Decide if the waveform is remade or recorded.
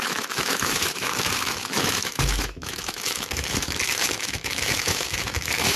remade